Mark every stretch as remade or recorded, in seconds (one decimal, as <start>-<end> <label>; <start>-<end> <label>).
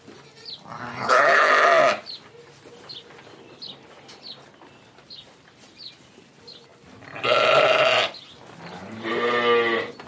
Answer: 0.0-0.9 recorded; 0.9-1.5 remade; 1.5-10.1 recorded